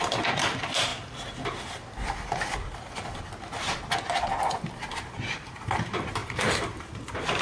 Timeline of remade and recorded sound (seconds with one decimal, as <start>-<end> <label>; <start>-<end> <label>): 0.0-0.9 remade; 0.9-5.0 recorded; 5.0-7.4 remade